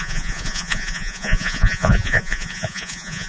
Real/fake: fake